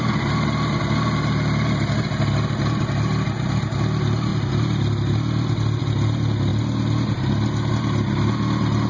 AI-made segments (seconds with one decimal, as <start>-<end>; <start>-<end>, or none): none